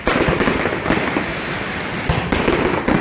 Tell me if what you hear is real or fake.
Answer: real